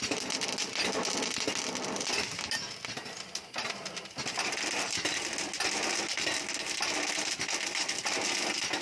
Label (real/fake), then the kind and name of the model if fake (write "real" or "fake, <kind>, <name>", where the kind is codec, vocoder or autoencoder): real